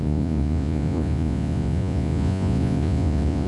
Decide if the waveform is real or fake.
fake